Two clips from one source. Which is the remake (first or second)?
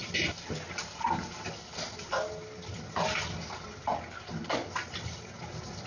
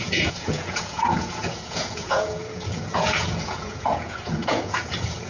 second